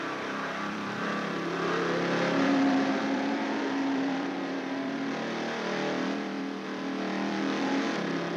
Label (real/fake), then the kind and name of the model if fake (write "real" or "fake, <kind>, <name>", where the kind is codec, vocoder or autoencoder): fake, vocoder, BigVGAN v2